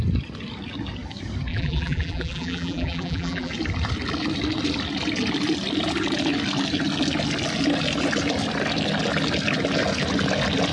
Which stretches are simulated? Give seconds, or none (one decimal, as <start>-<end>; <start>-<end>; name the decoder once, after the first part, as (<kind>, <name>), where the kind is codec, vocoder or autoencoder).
1.5-3.5 (vocoder, BigVGAN v2)